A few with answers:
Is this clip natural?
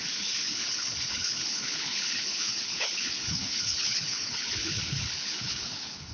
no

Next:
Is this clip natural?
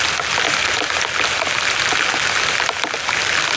yes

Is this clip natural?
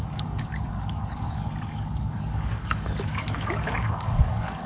no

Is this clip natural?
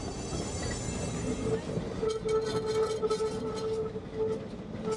yes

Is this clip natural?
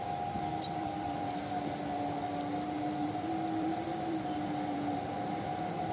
no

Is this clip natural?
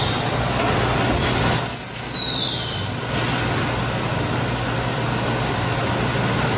yes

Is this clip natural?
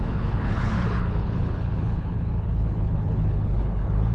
no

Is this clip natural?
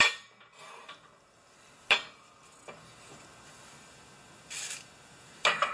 yes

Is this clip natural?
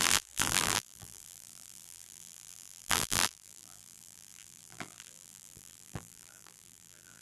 no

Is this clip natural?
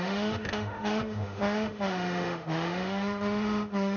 no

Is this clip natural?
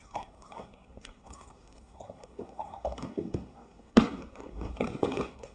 no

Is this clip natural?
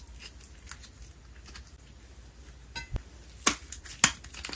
yes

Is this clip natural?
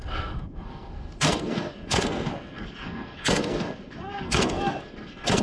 no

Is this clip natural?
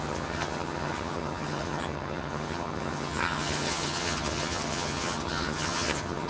no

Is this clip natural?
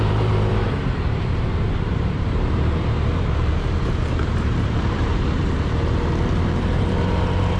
no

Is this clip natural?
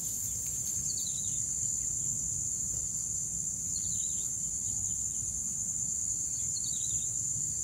no